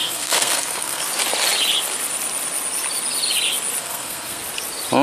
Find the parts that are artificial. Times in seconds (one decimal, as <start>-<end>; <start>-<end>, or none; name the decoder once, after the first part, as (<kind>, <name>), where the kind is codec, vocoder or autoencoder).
0.0-1.0 (codec, SNAC); 3.8-4.4